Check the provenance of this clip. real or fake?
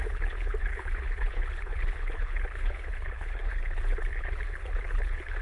fake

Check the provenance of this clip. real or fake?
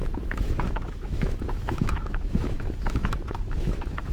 fake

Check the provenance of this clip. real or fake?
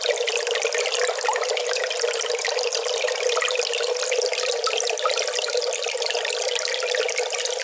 real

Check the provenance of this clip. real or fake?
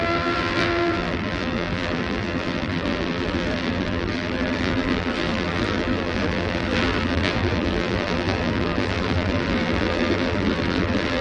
fake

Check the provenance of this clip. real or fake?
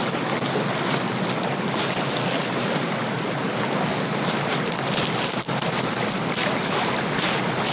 real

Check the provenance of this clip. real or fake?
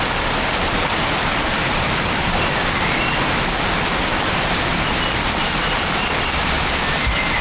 real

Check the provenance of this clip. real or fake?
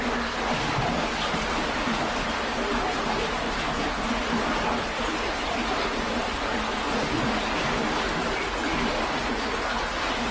real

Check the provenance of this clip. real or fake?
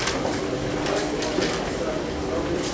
real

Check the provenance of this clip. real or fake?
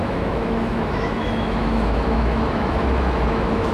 fake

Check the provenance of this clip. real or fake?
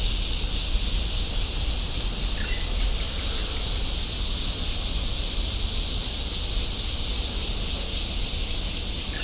real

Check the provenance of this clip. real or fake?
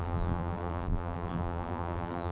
fake